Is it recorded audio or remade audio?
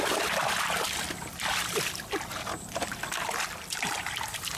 recorded